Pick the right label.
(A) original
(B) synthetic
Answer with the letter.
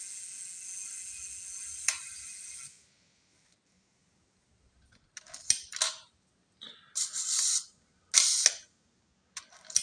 A